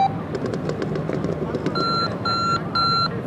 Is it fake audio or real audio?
real